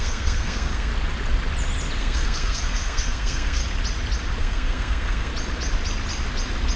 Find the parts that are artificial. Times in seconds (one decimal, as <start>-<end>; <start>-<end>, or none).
0.0-0.9; 2.0-3.6; 4.4-5.3